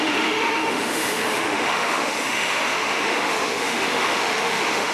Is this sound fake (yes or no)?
yes